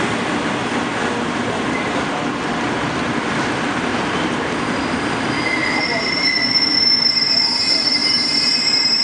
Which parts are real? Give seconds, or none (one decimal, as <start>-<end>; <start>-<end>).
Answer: 3.9-4.5